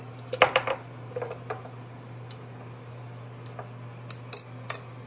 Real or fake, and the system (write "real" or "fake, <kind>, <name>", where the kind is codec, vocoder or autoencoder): real